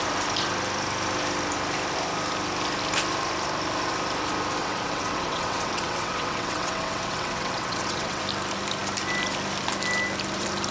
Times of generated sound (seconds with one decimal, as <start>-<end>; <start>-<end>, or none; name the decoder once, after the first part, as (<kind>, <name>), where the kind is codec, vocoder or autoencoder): 4.6-8.2 (vocoder, WaveNeXt)